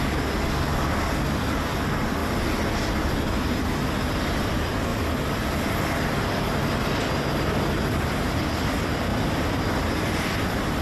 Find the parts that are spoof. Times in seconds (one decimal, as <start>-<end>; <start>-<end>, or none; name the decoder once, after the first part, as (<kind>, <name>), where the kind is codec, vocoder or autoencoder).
2.2-3.2 (vocoder, BigVGAN v2); 9.1-9.6